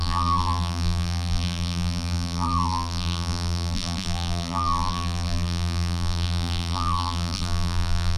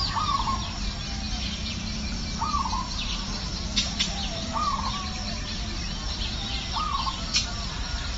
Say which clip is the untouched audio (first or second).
second